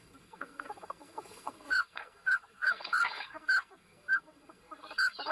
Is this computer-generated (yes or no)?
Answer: yes